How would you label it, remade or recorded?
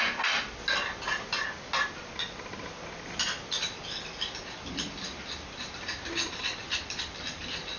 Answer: recorded